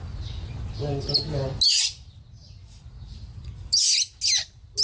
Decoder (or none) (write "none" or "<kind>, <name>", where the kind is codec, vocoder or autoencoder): none